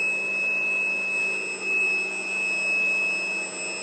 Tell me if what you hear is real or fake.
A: real